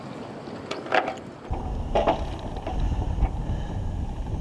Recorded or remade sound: recorded